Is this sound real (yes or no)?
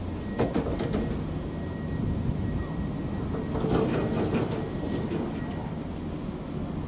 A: yes